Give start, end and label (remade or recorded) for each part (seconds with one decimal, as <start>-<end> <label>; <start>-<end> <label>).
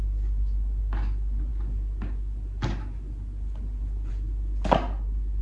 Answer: 0.0-5.4 recorded